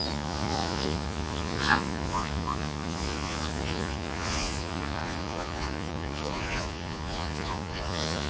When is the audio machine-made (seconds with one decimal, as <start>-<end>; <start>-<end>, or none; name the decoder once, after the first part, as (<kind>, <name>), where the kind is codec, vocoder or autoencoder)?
0.0-8.3 (vocoder, Vocos)